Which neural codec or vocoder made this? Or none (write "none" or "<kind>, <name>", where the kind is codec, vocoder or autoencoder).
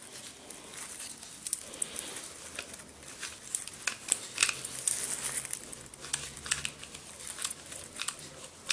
none